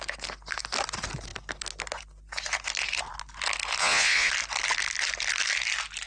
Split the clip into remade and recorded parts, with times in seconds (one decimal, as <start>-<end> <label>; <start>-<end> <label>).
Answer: 0.0-3.8 recorded; 3.8-4.3 remade; 4.3-6.1 recorded